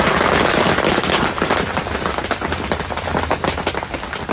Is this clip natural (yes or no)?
yes